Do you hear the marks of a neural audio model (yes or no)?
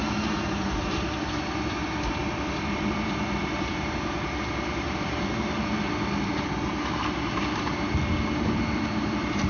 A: yes